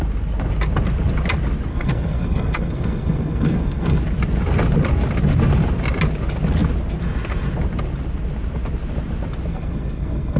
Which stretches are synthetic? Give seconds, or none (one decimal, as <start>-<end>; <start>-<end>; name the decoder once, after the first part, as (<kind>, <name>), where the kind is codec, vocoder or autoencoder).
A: 1.7-4.0 (codec, SNAC); 9.5-10.4